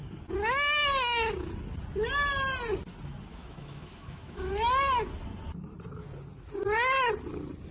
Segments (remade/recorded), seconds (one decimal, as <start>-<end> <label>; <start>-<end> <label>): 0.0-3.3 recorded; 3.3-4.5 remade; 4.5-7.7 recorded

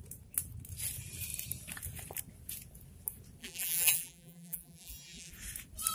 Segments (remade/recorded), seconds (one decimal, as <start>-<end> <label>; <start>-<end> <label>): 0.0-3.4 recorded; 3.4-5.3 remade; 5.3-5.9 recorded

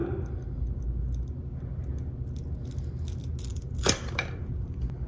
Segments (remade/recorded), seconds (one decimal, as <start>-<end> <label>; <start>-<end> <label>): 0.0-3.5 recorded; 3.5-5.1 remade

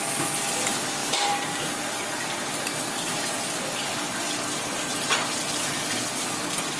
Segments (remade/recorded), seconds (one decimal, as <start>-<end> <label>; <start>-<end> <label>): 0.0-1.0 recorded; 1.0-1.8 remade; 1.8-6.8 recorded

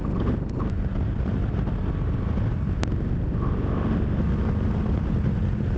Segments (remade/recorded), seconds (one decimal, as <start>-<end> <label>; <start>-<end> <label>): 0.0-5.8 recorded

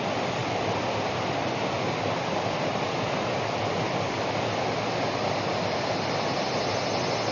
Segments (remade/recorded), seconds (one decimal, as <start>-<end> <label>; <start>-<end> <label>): 0.0-7.3 recorded

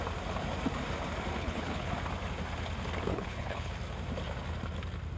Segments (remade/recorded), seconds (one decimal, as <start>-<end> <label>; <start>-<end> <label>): 0.0-1.4 recorded; 1.4-1.9 remade; 1.9-3.1 recorded; 3.1-3.7 remade; 3.7-5.2 recorded

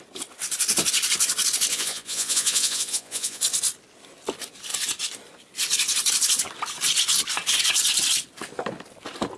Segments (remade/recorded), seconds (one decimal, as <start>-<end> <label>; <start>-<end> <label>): 0.0-1.7 recorded; 1.7-3.4 remade; 3.4-9.4 recorded